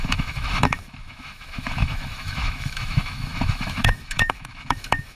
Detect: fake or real fake